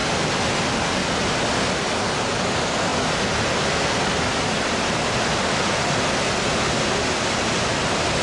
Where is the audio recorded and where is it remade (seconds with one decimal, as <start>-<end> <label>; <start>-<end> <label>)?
0.0-8.2 recorded